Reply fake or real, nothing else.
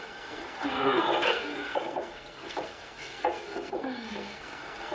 fake